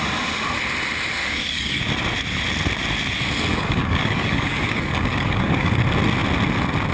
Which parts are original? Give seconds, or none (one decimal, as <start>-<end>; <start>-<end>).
0.0-1.2; 1.8-3.5; 5.8-6.9